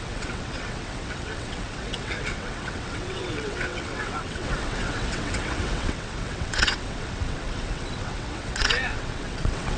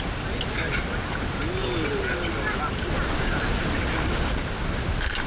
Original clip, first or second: second